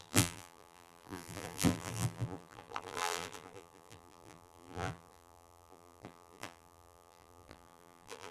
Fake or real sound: fake